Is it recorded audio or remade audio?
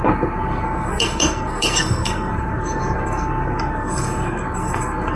remade